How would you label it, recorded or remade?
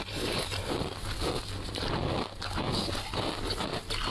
recorded